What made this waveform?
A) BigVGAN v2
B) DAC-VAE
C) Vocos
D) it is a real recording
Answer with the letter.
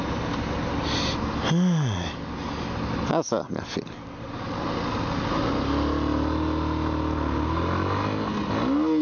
D